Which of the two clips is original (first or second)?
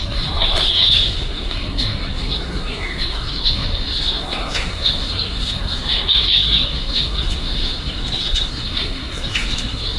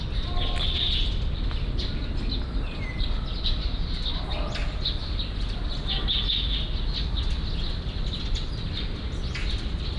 second